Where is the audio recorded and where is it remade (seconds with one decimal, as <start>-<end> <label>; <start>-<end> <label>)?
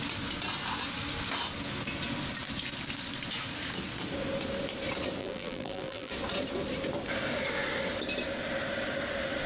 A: 0.0-5.2 recorded; 5.2-6.1 remade; 6.1-9.5 recorded